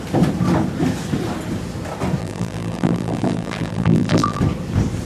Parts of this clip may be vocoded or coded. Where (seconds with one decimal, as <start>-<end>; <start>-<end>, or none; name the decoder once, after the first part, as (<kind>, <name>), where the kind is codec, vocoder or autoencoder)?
2.2-4.4 (vocoder, BigVGAN v2)